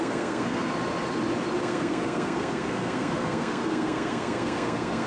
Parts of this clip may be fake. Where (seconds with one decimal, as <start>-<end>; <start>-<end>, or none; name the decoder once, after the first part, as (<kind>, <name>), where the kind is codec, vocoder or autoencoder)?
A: 0.0-0.7 (codec, SNAC); 1.6-5.1